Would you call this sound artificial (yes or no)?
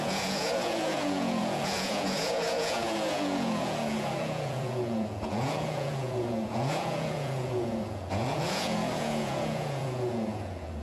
yes